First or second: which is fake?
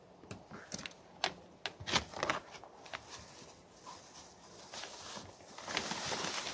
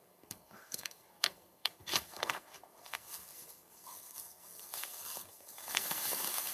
second